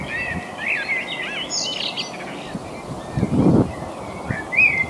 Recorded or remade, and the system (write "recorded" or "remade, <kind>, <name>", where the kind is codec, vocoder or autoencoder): recorded